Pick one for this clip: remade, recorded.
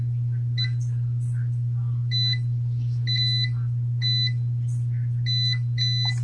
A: recorded